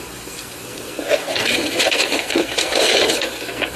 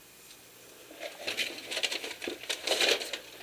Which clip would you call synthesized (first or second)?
first